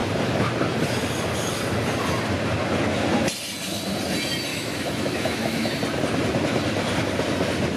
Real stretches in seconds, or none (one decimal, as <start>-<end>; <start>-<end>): 0.0-4.5; 5.7-7.8